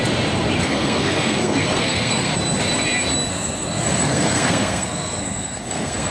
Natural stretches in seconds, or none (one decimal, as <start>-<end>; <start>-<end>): 0.0-0.6; 2.3-3.3